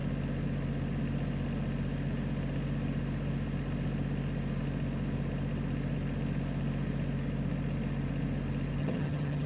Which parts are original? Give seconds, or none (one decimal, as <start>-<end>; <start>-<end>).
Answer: 0.0-8.8

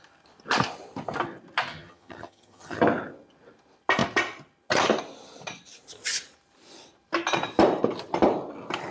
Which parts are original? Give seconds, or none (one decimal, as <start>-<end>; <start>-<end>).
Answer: 0.0-1.7; 2.8-8.9

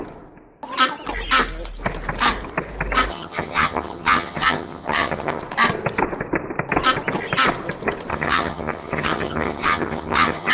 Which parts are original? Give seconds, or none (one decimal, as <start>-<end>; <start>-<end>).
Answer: 0.0-3.1; 5.4-8.1

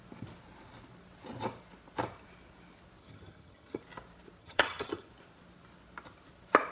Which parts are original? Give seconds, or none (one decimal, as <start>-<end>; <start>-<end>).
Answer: 0.0-3.0; 3.8-4.4; 5.1-6.7